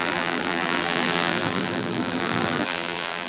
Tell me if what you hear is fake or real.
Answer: fake